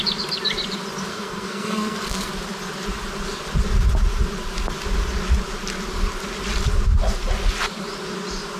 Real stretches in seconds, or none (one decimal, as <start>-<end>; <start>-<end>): 0.0-1.1; 2.3-8.6